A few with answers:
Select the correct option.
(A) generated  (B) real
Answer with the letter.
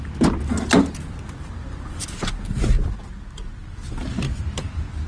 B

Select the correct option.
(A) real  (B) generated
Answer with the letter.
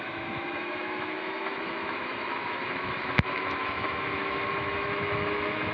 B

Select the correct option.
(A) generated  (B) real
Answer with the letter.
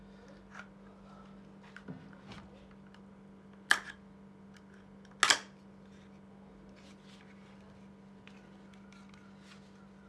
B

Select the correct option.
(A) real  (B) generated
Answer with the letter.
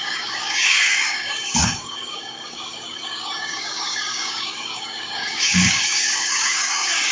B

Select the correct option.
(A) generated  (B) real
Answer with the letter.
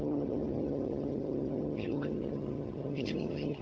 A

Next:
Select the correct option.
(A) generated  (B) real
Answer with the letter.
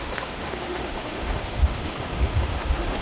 A